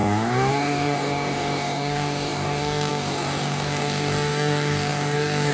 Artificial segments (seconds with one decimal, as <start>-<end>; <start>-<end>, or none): 0.0-5.5